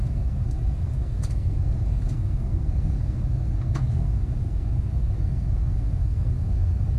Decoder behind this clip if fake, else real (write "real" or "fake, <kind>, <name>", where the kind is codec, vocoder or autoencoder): fake, codec, SNAC